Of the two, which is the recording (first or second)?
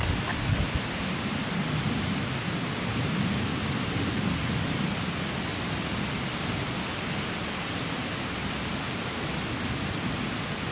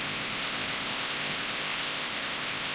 first